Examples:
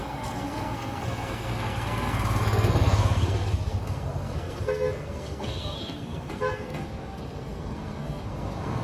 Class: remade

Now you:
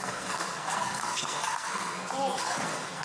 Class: remade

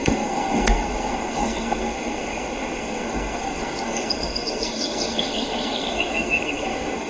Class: remade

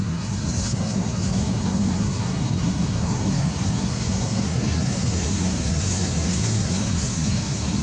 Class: remade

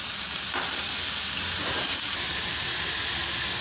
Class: recorded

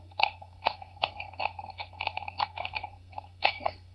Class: remade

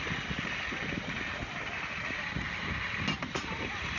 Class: recorded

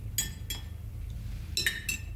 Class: recorded